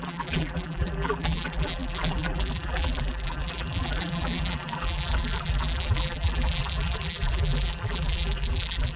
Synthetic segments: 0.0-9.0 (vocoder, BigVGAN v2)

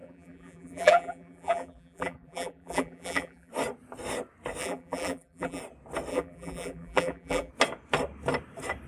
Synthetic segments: 0.0-3.5 (vocoder, BigVGAN v2); 4.6-5.6; 6.1-7.5

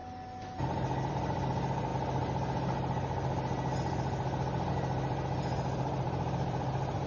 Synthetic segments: 1.1-1.9 (vocoder, BigVGAN v2); 4.7-7.1

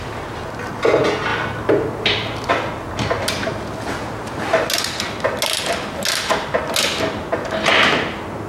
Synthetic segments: none